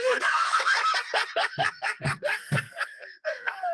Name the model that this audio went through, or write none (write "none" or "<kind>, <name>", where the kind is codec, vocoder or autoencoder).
codec, SNAC